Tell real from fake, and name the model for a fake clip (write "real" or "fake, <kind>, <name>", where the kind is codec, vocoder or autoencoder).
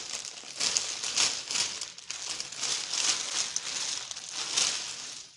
real